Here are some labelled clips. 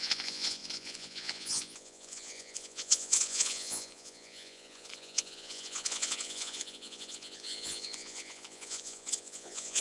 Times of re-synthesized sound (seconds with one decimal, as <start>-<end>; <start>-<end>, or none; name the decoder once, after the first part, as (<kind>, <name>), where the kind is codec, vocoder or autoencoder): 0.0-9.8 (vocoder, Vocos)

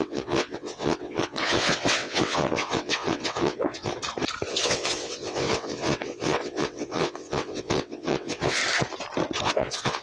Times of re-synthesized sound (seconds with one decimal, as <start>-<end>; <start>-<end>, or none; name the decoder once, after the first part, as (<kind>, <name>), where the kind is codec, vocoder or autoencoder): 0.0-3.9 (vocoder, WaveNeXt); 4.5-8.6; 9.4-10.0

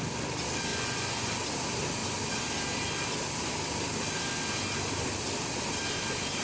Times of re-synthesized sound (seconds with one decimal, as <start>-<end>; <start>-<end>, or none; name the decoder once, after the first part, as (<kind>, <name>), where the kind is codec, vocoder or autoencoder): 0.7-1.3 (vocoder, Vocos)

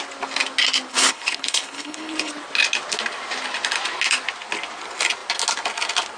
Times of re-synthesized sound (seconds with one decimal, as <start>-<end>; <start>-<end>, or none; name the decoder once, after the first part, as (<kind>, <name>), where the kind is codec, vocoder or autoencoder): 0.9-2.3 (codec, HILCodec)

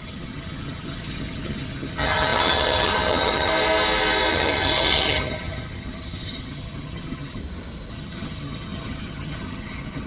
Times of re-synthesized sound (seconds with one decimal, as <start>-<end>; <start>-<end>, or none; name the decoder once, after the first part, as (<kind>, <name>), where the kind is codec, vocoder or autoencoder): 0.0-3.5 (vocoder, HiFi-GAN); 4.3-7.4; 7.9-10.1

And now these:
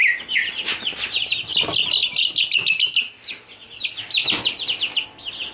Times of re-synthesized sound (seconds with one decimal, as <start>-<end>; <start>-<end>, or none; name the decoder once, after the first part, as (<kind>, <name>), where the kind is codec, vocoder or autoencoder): none